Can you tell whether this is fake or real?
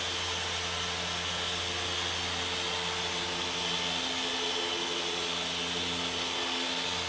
real